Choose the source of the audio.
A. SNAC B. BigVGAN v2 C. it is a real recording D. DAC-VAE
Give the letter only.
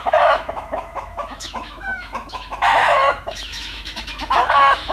D